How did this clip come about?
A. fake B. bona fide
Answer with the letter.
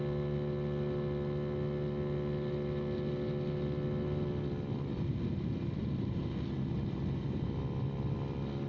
B